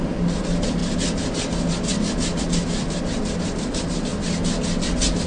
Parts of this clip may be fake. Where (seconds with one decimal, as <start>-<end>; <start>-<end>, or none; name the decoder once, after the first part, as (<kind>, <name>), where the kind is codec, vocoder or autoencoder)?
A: 0.0-0.8 (vocoder, BigVGAN v2); 2.4-4.1

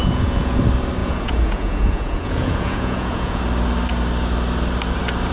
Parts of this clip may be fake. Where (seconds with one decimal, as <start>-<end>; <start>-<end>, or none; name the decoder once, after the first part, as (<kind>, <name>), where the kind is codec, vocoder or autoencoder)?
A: 0.0-0.6 (vocoder, Vocos); 1.0-3.4

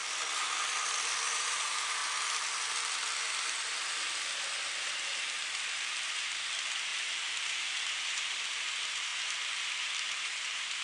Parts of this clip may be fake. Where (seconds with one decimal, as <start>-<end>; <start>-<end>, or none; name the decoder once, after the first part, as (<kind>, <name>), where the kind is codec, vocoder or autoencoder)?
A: 1.4-2.0 (vocoder, BigVGAN v2); 5.8-10.8